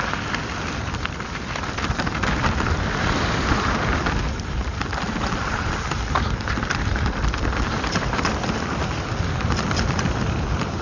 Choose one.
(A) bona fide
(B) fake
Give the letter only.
B